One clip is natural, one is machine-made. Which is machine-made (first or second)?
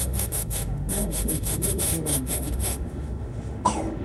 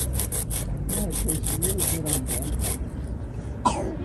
first